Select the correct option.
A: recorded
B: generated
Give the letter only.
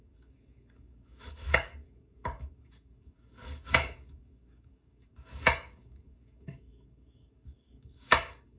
B